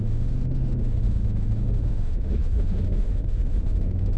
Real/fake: fake